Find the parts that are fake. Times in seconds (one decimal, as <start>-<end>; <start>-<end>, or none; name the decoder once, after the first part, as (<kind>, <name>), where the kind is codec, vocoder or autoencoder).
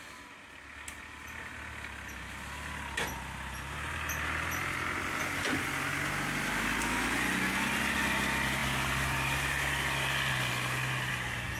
none